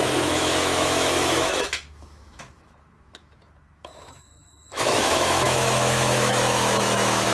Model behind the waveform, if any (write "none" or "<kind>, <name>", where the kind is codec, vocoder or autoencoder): autoencoder, DAC-VAE